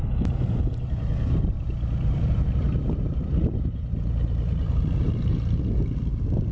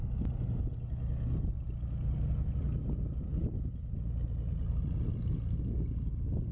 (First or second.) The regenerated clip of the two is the first